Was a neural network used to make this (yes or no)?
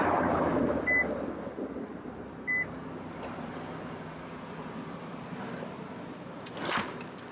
no